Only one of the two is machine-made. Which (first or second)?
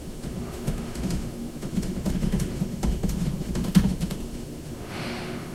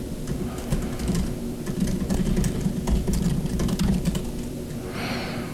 first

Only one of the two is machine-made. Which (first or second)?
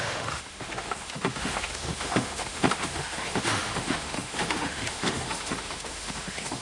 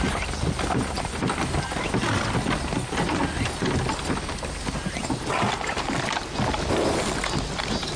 first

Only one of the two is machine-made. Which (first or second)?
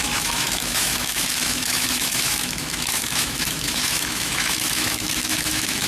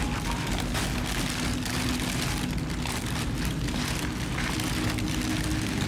first